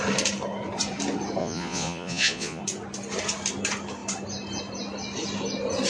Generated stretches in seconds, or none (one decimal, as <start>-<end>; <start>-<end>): 1.4-2.6